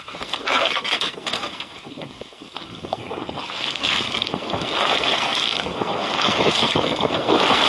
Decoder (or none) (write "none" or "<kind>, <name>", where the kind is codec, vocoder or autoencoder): codec, SNAC